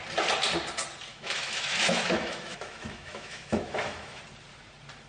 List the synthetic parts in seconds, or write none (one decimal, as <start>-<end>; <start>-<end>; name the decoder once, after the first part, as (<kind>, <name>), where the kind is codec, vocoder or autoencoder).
1.1-4.2 (autoencoder, DAC-VAE)